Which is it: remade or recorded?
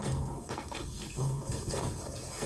remade